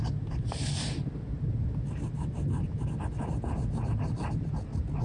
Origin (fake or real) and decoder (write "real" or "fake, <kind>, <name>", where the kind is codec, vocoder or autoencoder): real